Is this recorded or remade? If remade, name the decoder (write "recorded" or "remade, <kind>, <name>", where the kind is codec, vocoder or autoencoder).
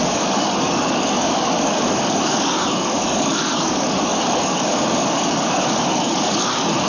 remade, codec, DAC